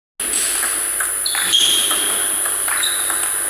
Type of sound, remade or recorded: recorded